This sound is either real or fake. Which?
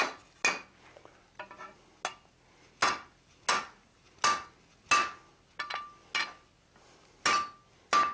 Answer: real